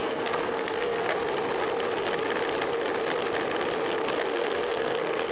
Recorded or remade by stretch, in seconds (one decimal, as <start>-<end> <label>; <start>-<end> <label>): 0.0-1.1 remade; 1.1-4.3 recorded; 4.3-5.3 remade